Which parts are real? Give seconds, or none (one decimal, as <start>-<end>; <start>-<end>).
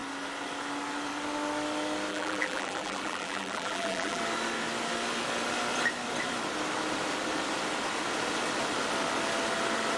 0.0-2.1; 4.2-10.0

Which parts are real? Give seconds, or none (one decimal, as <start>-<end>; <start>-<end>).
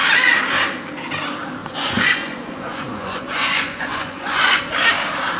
0.0-1.6; 4.6-5.4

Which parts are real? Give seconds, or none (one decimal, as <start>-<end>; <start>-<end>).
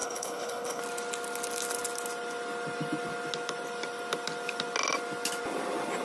0.8-6.0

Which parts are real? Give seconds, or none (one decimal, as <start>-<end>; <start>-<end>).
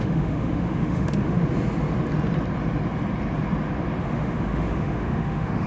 1.4-4.0